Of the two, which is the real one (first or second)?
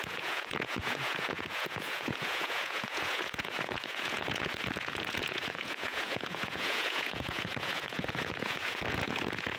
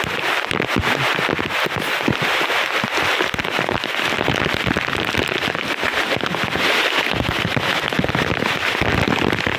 second